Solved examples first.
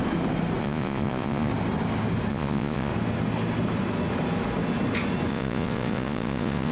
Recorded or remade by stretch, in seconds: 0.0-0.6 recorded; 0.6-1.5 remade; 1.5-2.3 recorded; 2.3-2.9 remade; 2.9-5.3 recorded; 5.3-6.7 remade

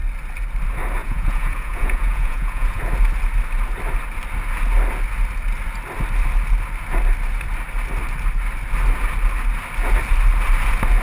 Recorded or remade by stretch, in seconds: 0.0-1.0 recorded; 1.0-2.8 remade; 2.8-11.0 recorded

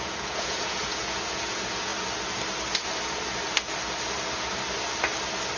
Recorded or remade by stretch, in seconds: 0.0-1.9 remade; 1.9-5.6 recorded

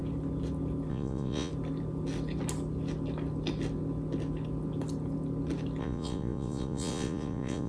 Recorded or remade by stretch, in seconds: 0.0-0.9 recorded; 0.9-1.5 remade; 1.5-5.8 recorded; 5.8-7.7 remade

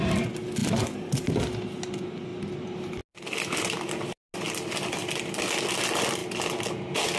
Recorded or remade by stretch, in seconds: 0.0-7.2 recorded

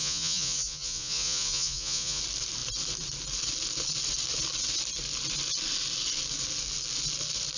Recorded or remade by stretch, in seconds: 0.0-2.2 remade; 2.2-7.6 recorded

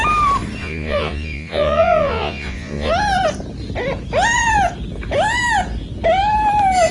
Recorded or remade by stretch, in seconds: 0.0-0.6 recorded; 0.6-2.9 remade; 2.9-6.9 recorded